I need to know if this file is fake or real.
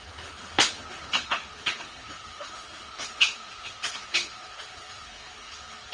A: fake